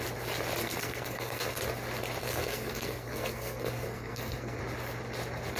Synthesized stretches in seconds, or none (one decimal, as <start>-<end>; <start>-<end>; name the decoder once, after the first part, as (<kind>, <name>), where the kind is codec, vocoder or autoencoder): 0.6-1.6 (codec, SNAC); 2.2-4.6